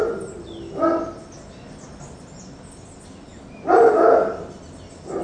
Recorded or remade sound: recorded